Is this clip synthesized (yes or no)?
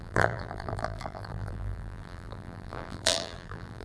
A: yes